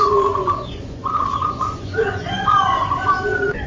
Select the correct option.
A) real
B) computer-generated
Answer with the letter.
B